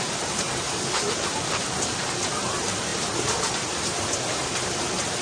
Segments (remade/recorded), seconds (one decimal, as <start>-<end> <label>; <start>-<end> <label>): 0.0-5.2 remade